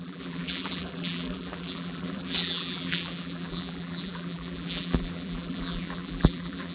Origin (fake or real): fake